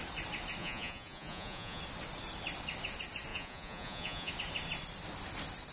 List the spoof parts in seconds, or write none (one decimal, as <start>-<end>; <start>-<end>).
0.6-1.8; 3.3-4.3